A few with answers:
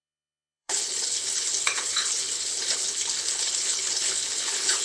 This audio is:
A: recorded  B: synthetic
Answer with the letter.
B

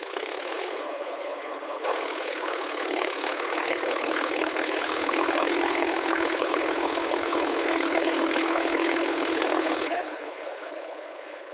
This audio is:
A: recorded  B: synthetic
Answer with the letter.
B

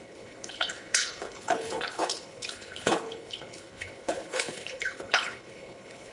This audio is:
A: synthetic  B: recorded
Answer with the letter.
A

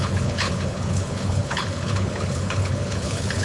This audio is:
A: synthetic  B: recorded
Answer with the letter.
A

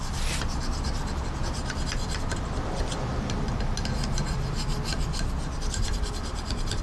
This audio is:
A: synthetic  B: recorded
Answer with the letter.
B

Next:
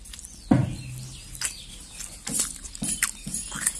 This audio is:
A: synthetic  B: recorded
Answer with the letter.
B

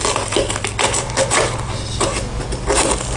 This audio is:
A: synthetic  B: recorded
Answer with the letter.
B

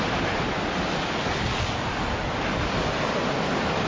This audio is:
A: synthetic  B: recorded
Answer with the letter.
B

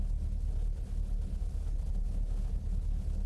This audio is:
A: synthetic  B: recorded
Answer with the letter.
B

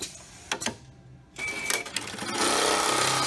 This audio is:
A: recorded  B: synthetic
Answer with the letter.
A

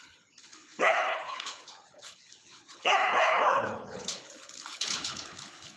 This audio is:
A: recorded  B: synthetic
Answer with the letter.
B